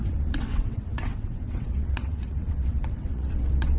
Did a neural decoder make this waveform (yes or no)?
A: yes